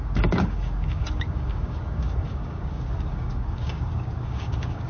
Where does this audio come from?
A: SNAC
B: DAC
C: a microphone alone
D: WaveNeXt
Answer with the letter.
B